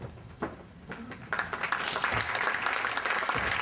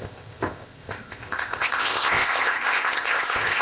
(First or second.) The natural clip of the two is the first